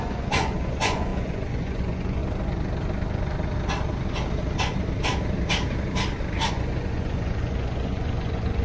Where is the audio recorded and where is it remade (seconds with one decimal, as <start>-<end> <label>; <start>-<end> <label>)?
0.0-2.2 remade; 2.2-6.5 recorded; 6.5-8.6 remade